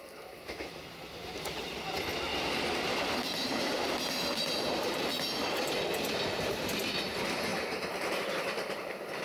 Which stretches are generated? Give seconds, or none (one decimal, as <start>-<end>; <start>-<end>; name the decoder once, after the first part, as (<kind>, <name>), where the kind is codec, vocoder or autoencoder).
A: 2.9-5.1 (vocoder, BigVGAN v2); 7.5-9.2